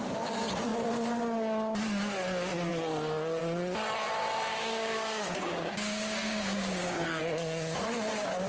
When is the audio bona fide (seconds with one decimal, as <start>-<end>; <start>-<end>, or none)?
0.0-4.5; 7.2-8.5